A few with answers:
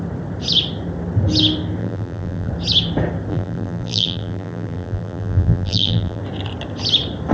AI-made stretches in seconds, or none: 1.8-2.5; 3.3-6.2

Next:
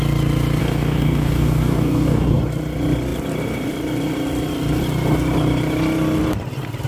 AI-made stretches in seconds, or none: 0.6-2.4

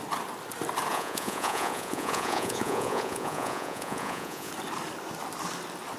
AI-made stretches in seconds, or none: 0.9-4.5